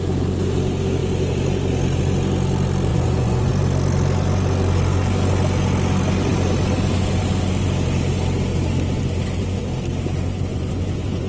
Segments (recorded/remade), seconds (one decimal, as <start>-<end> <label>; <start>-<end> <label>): 0.0-2.9 recorded; 2.9-3.5 remade; 3.5-10.5 recorded; 10.5-11.3 remade